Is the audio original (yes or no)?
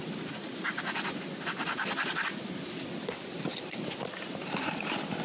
yes